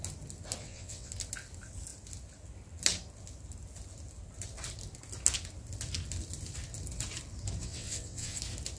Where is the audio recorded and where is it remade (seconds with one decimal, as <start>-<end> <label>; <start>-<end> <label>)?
0.0-0.6 recorded; 0.6-1.1 remade; 1.1-7.6 recorded; 7.6-8.4 remade; 8.4-8.8 recorded